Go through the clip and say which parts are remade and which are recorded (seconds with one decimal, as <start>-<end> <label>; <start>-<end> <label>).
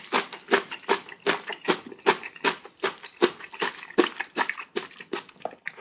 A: 0.0-5.8 recorded